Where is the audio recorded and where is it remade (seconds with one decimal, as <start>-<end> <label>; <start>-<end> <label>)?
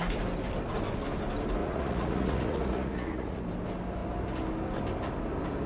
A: 0.0-1.6 recorded; 1.6-3.4 remade; 3.4-5.7 recorded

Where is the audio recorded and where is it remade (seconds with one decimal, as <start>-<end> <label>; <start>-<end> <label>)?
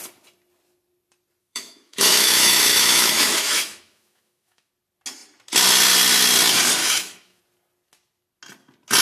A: 0.0-1.4 recorded; 1.4-4.7 remade; 4.7-6.8 recorded; 6.8-7.4 remade; 7.4-9.0 recorded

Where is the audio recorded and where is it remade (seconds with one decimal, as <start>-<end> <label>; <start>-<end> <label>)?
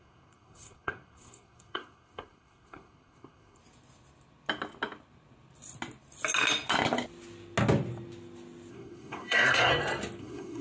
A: 0.0-3.6 remade; 3.6-8.7 recorded; 8.7-9.7 remade; 9.7-10.2 recorded; 10.2-10.6 remade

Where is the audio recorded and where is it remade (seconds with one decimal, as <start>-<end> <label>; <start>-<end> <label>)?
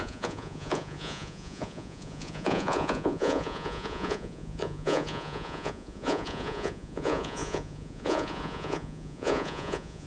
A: 0.0-10.1 remade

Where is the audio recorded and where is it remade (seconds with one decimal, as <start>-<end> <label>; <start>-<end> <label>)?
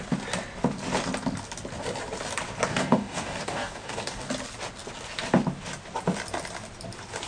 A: 0.0-2.7 recorded; 2.7-4.3 remade; 4.3-7.3 recorded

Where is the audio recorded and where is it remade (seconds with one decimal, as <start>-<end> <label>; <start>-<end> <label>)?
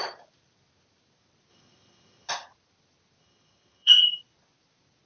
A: 0.0-1.5 recorded; 1.5-2.3 remade; 2.3-3.2 recorded; 3.2-4.2 remade; 4.2-5.1 recorded